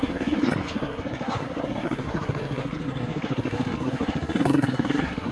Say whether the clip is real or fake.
fake